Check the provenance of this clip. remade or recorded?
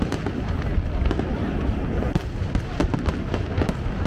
recorded